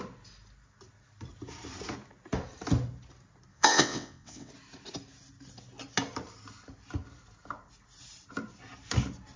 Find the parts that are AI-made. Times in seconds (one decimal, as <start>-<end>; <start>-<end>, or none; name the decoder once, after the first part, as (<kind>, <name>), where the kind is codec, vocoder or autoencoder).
3.5-4.5 (vocoder, WaveNeXt)